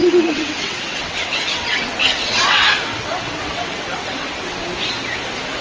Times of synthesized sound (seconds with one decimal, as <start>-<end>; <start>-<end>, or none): 0.0-4.6